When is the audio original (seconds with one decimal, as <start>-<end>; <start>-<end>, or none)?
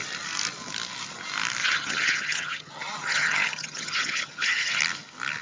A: 0.0-1.6; 4.8-5.4